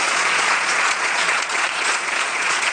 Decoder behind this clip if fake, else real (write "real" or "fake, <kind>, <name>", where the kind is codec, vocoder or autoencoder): fake, vocoder, Vocos